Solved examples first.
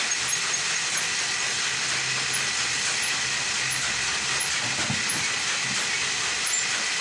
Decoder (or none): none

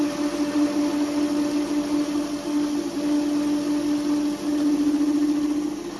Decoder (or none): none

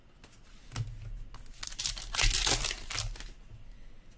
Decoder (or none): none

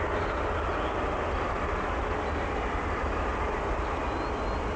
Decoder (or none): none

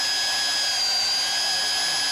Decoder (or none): none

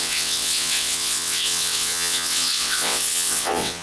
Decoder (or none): vocoder, WaveNeXt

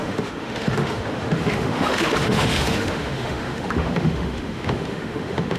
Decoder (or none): autoencoder, DAC-VAE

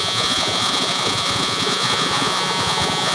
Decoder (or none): vocoder, Vocos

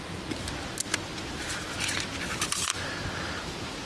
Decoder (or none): none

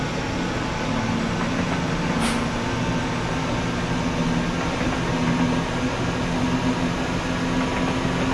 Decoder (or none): none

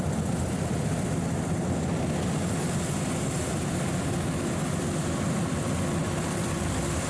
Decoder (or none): none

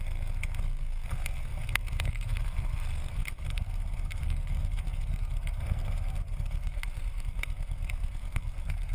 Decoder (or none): codec, SNAC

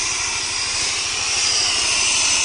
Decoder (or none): none